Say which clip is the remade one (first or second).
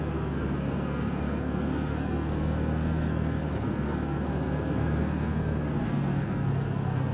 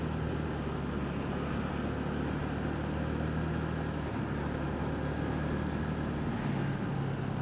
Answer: first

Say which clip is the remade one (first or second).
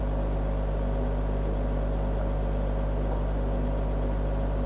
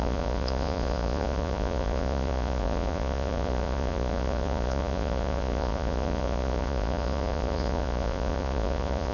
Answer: second